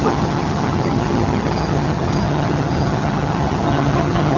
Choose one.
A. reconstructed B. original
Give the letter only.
A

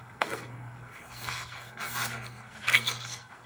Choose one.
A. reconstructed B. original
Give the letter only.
A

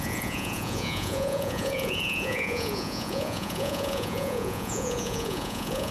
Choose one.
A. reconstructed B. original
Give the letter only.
A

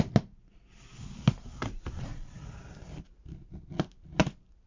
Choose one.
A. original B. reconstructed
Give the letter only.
A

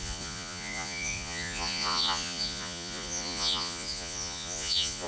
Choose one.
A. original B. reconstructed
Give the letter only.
B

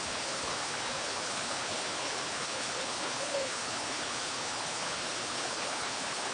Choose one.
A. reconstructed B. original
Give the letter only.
A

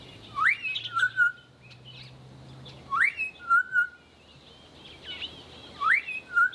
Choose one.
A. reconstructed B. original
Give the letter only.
B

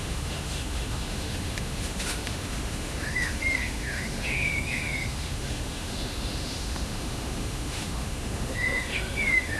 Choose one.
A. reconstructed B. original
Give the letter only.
A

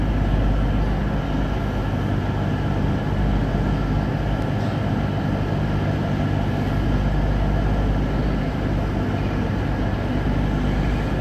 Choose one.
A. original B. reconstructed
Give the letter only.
A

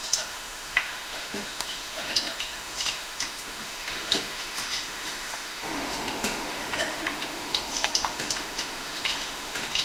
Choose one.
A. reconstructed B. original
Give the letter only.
A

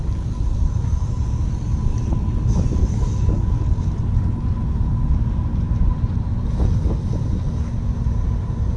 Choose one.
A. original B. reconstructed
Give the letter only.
A